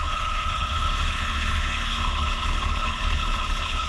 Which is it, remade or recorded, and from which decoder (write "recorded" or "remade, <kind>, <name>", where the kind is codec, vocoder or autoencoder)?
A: remade, codec, HILCodec